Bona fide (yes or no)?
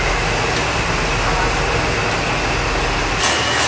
yes